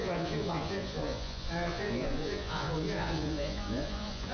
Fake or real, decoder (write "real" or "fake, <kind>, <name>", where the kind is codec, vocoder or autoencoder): fake, vocoder, Vocos